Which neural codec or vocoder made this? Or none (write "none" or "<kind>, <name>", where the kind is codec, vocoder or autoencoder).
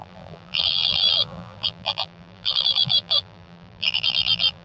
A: vocoder, BigVGAN v2